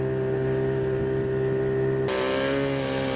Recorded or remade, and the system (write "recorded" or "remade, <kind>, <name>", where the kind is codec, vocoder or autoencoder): recorded